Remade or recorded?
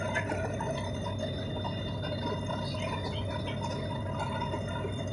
recorded